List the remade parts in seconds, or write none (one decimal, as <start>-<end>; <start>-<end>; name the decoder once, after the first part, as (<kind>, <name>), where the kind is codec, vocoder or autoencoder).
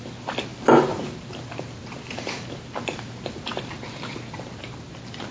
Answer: none